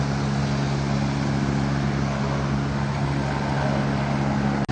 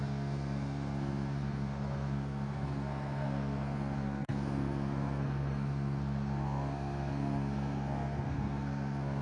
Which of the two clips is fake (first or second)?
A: second